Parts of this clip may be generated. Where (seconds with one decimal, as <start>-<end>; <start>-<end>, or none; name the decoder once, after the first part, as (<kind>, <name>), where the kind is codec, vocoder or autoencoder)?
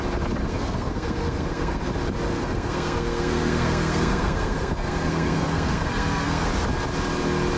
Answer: 0.4-1.9 (codec, SNAC); 2.3-6.5